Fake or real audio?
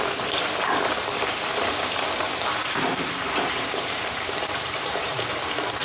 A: fake